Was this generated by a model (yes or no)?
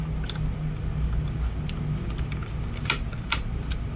no